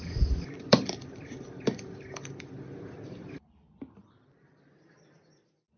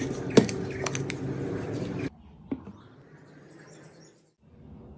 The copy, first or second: first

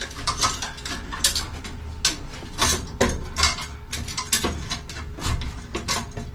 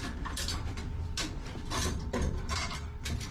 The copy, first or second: second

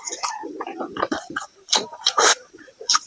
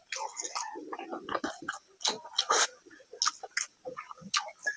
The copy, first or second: first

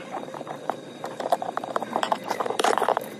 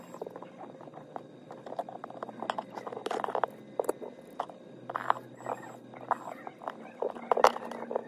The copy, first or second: first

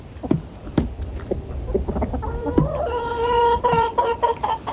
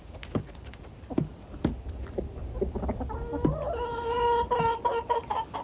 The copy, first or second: first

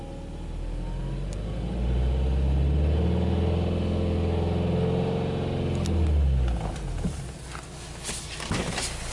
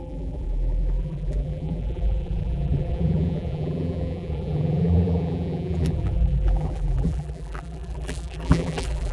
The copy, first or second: second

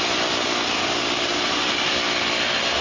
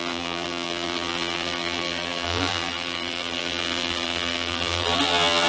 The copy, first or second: second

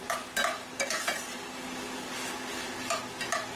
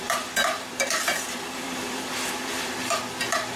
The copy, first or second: second